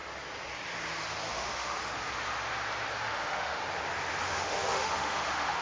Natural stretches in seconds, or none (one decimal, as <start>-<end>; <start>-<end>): 0.0-1.3; 1.8-3.0; 3.6-4.2